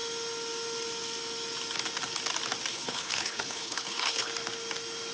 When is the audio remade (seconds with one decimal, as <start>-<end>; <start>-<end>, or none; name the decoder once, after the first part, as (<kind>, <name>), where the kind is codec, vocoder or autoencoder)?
2.7-4.3 (codec, HILCodec)